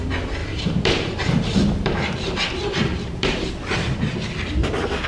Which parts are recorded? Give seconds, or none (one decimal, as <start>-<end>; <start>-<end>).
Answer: 0.0-0.4; 3.5-5.1